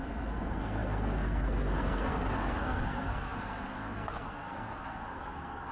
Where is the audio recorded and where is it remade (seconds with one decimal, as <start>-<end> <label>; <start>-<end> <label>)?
0.0-5.7 remade